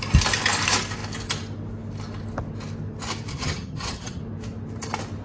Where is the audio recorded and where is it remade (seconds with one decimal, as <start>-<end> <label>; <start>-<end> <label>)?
0.0-3.3 recorded; 3.3-4.2 remade; 4.2-5.2 recorded

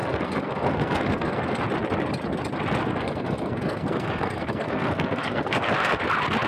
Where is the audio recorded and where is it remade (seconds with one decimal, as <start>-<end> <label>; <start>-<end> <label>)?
0.0-1.6 remade; 1.6-2.8 recorded; 2.8-6.0 remade; 6.0-6.5 recorded

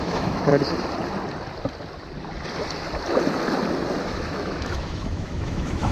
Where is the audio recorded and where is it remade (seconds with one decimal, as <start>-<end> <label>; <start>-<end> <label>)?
0.0-0.5 remade; 0.5-4.0 recorded; 4.0-5.9 remade

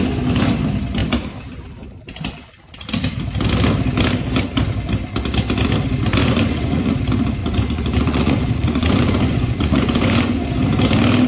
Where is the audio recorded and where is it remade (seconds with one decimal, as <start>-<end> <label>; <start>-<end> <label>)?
0.0-6.2 recorded; 6.2-6.9 remade; 6.9-7.4 recorded; 7.4-10.4 remade; 10.4-11.3 recorded

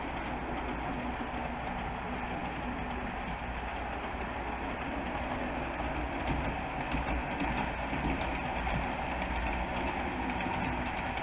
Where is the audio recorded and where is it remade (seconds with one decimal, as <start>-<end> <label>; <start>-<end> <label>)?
0.0-11.2 recorded

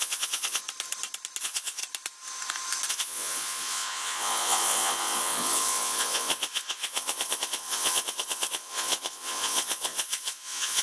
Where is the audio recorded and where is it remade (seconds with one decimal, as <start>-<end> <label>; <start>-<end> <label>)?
0.0-0.6 remade; 0.6-1.4 recorded; 1.4-1.8 remade; 1.8-2.9 recorded; 2.9-10.8 remade